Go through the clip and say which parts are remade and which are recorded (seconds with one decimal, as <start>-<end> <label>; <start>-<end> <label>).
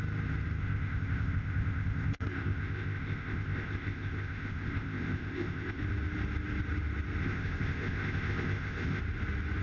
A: 0.0-0.6 recorded; 0.6-5.8 remade; 5.8-7.2 recorded; 7.2-9.0 remade; 9.0-9.6 recorded